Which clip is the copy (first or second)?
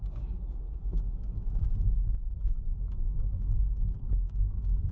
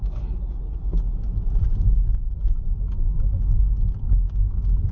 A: first